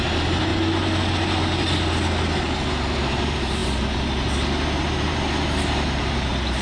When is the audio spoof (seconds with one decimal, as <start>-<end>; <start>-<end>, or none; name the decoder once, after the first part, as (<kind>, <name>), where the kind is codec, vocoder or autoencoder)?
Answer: 0.0-0.5 (vocoder, BigVGAN v2); 2.5-6.6